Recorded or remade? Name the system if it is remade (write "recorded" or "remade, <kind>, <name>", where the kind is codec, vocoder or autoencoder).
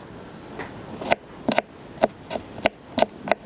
recorded